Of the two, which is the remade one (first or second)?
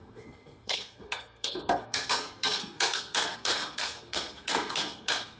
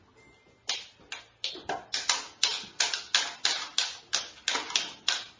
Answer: first